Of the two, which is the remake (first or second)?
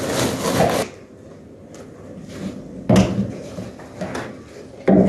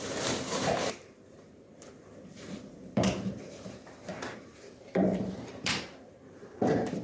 second